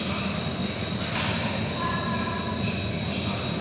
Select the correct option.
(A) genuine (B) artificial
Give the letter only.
A